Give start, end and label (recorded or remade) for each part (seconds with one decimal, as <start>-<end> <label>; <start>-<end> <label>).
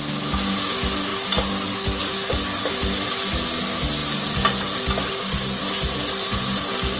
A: 0.0-7.0 recorded